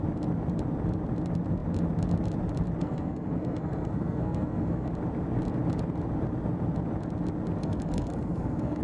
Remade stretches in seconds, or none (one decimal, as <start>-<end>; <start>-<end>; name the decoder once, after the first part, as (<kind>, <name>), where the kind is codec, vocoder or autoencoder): 2.8-4.9 (codec, SNAC); 7.6-8.8